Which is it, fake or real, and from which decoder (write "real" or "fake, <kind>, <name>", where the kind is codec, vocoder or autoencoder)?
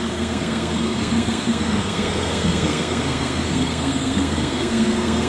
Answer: fake, codec, SNAC